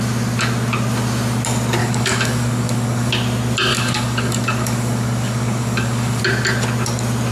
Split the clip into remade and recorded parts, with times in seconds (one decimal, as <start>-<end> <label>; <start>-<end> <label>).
0.0-1.8 recorded; 1.8-3.1 remade; 3.1-3.7 recorded; 3.7-6.2 remade; 6.2-7.3 recorded